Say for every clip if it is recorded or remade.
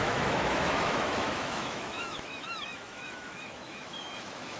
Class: remade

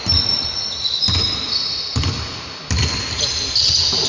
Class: recorded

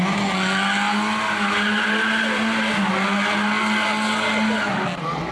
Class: recorded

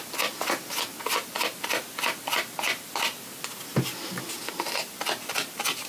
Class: recorded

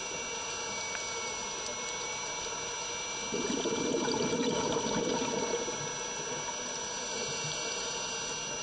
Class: recorded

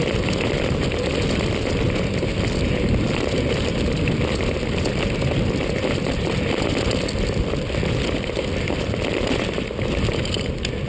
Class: recorded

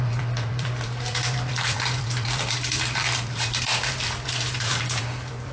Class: remade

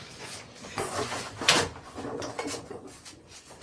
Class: remade